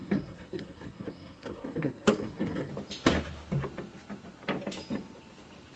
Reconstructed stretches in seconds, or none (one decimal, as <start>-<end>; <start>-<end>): 0.0-2.7